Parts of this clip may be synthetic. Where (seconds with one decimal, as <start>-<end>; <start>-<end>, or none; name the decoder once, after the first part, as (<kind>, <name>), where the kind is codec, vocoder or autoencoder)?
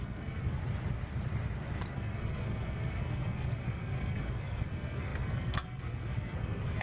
0.0-0.6 (codec, SNAC); 1.9-6.8